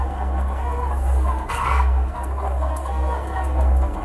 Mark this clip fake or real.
fake